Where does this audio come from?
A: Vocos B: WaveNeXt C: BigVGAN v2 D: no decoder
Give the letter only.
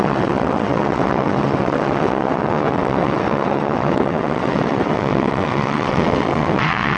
B